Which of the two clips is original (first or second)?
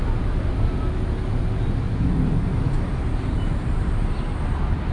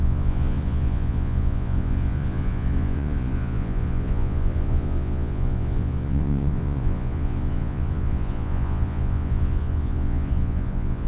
first